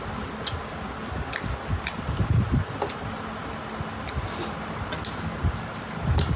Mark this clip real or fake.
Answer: real